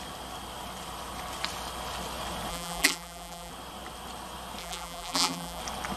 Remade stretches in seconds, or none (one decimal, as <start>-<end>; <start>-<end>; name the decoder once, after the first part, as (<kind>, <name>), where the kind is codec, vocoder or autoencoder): 2.5-3.5 (vocoder, BigVGAN v2); 4.6-5.6